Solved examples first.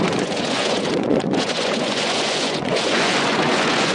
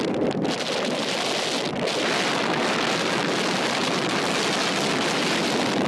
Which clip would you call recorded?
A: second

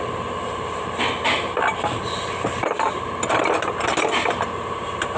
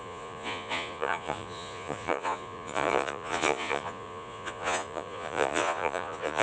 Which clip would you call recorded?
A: first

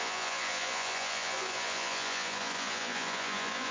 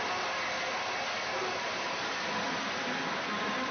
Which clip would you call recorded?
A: second